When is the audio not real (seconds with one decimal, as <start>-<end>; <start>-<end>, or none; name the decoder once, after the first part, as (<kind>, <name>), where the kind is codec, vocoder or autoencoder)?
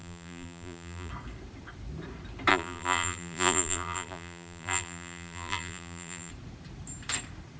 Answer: 0.0-1.1 (vocoder, BigVGAN v2); 2.5-6.3